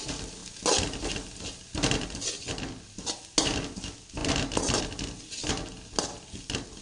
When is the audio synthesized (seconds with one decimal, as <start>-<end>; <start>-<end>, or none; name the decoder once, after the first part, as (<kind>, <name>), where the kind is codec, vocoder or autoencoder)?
none